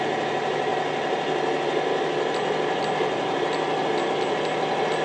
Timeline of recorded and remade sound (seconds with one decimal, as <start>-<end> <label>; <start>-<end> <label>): 0.0-5.0 recorded